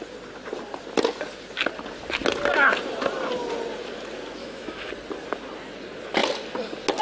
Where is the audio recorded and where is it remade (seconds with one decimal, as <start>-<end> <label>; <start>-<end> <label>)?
0.0-4.4 recorded; 4.4-4.9 remade; 4.9-7.0 recorded